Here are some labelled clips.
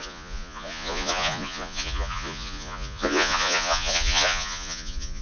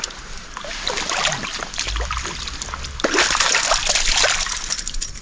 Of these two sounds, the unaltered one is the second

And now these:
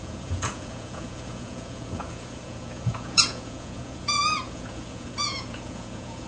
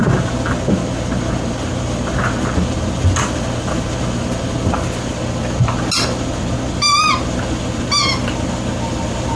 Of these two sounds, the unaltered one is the second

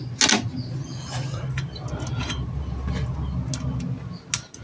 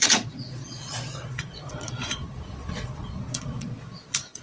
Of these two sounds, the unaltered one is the first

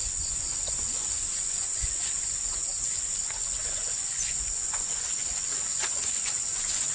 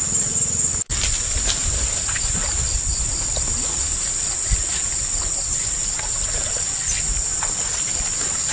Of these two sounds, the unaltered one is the second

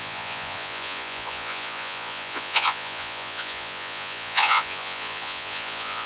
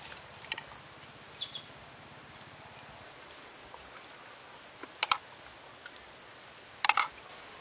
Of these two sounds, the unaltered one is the second